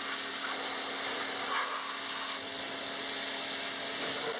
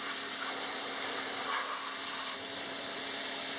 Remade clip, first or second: second